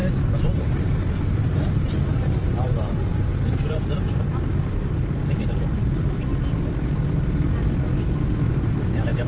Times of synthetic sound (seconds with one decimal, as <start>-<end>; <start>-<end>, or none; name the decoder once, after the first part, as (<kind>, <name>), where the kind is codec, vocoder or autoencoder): 0.0-6.3 (vocoder, BigVGAN v2); 8.5-9.3